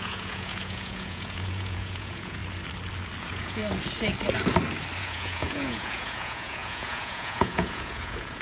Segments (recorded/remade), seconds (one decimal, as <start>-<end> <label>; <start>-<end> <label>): 0.0-2.4 remade; 2.4-3.2 recorded; 3.2-3.6 remade; 3.6-5.0 recorded; 5.0-8.4 remade